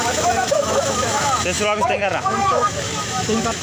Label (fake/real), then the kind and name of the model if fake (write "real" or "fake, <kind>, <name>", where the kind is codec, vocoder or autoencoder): fake, autoencoder, DAC-VAE